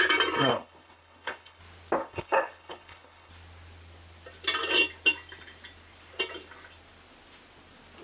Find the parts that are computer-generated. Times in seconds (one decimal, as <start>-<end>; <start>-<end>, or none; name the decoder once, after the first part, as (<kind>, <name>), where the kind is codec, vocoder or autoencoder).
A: 0.5-1.6 (codec, HILCodec); 2.0-3.3